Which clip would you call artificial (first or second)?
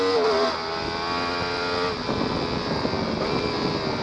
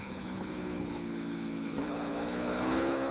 second